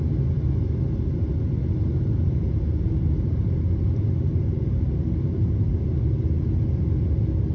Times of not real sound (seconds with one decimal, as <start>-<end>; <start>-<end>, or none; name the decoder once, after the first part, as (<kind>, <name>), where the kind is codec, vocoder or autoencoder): 1.9-5.9 (vocoder, BigVGAN v2)